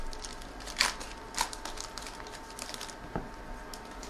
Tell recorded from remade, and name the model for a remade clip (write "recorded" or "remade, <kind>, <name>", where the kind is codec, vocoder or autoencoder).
recorded